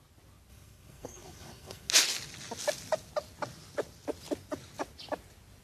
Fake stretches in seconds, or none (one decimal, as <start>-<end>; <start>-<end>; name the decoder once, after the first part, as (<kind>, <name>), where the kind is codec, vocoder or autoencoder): 0.5-1.9 (codec, SNAC)